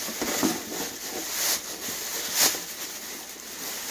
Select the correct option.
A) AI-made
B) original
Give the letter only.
B